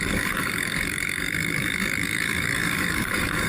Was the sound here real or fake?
fake